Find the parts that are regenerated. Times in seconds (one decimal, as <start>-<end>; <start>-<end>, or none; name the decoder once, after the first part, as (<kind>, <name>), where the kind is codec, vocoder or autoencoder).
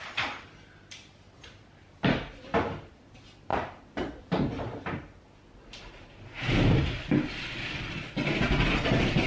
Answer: none